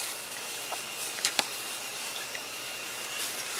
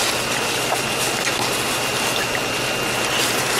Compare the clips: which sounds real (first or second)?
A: second